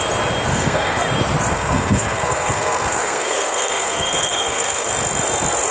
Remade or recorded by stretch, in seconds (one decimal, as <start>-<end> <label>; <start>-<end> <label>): 0.0-0.5 recorded; 0.5-1.0 remade; 1.0-1.5 recorded; 1.5-4.9 remade; 4.9-5.7 recorded